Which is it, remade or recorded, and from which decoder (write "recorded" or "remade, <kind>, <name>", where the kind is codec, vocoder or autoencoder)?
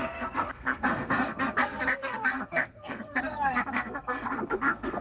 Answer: remade, codec, SNAC